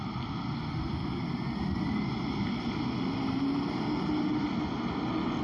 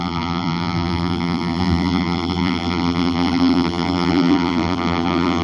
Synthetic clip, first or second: second